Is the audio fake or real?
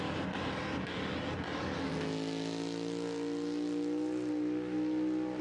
real